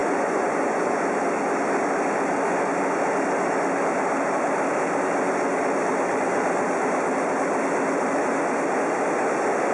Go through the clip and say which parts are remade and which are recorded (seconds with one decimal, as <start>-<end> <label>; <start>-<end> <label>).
0.0-1.0 remade; 1.0-9.7 recorded